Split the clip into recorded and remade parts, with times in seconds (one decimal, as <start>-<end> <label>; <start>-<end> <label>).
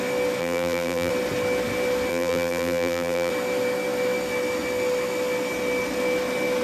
0.0-0.4 recorded; 0.4-1.1 remade; 1.1-2.1 recorded; 2.1-3.3 remade; 3.3-6.6 recorded